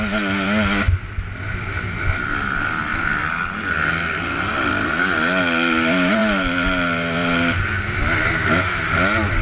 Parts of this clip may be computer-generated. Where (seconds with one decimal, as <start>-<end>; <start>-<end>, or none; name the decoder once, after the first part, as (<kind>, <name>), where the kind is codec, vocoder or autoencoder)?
none